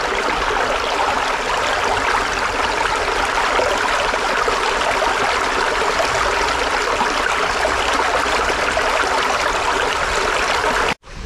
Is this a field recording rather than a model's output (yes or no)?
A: yes